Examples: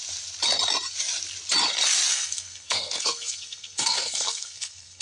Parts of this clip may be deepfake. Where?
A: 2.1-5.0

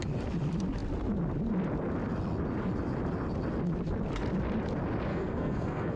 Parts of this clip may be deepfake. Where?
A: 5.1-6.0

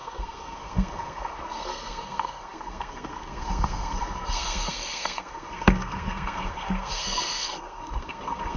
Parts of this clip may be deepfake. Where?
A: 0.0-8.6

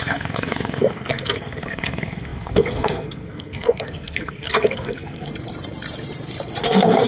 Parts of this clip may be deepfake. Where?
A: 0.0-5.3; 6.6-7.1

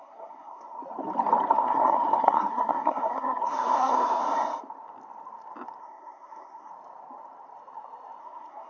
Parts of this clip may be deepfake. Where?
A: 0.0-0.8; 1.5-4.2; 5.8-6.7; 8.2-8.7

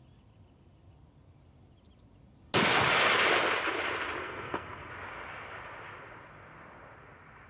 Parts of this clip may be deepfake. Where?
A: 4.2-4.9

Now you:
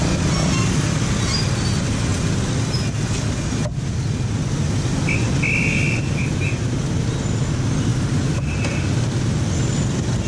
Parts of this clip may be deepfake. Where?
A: none

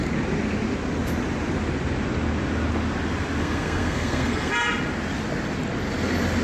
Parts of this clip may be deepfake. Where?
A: 3.4-4.5